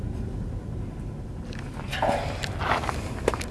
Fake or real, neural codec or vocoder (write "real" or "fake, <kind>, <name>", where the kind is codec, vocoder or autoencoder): real